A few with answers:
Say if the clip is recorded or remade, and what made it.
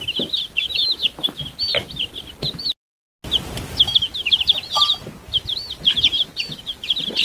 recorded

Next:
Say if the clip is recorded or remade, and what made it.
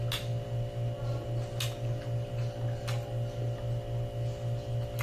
recorded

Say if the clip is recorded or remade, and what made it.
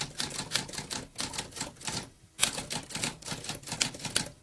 recorded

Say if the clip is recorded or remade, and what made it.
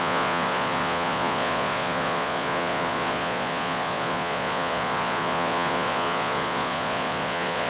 remade, vocoder, Vocos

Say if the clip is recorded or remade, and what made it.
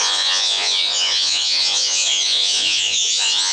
remade, vocoder, Vocos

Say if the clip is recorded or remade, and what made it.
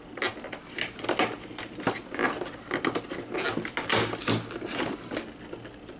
recorded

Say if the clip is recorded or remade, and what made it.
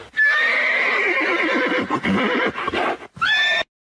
recorded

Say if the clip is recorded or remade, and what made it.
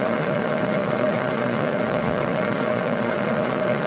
remade, vocoder, Vocos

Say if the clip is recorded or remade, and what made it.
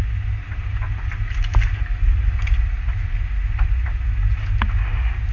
recorded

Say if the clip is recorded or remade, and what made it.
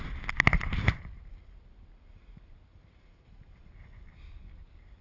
recorded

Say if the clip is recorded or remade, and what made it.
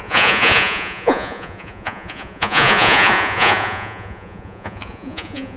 remade, vocoder, Vocos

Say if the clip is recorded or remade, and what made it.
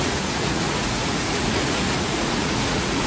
remade, vocoder, Vocos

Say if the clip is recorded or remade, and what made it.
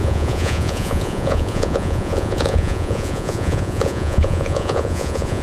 remade, vocoder, Vocos